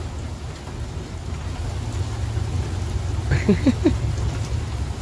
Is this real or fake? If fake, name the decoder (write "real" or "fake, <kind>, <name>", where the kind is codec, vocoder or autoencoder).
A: real